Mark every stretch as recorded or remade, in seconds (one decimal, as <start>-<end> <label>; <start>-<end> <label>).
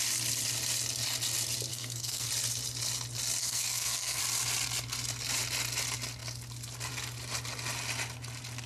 0.0-1.7 recorded; 1.7-2.3 remade; 2.3-3.4 recorded; 3.4-4.2 remade; 4.2-8.7 recorded